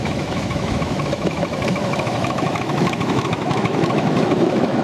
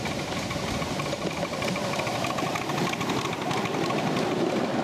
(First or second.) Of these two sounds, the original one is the second